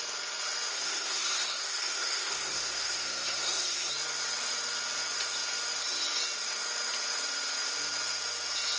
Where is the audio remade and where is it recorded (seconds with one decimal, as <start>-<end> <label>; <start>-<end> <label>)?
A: 0.0-0.7 recorded; 0.7-3.9 remade; 3.9-8.8 recorded